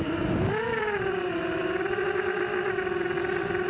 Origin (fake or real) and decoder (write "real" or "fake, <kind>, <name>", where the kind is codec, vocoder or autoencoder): fake, vocoder, BigVGAN v2